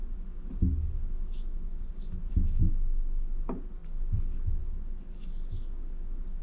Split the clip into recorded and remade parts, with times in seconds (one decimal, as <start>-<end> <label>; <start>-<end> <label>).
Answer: 0.0-6.4 recorded